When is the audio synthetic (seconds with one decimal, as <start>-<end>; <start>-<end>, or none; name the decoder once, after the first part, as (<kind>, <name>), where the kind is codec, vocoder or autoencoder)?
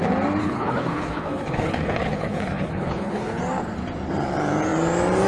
0.4-3.4 (codec, HILCodec)